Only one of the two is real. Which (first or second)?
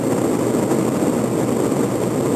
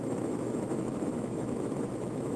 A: first